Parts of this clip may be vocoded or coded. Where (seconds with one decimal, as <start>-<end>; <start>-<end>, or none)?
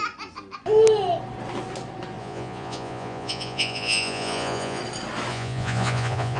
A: 2.2-4.8; 5.3-6.4